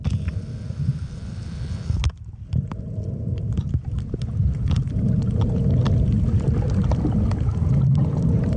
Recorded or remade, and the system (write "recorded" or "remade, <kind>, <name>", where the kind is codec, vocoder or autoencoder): recorded